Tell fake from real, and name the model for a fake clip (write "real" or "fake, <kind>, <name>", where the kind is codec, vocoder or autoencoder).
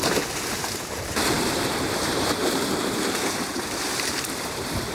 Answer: fake, vocoder, BigVGAN v2